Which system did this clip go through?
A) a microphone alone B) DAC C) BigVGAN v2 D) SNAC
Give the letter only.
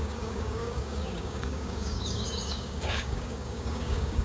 B